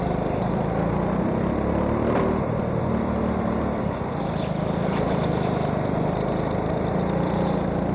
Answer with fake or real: real